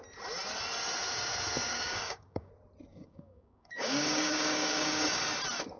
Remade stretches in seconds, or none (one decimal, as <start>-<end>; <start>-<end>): 1.7-2.5; 2.9-5.2